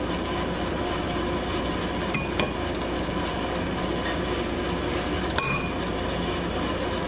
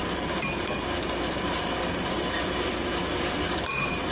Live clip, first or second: first